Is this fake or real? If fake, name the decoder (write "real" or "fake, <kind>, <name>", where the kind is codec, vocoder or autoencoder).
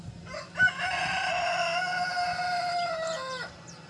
real